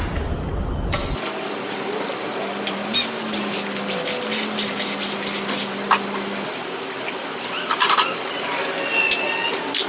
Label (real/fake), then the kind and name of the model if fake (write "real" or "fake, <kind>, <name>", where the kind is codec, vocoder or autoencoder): real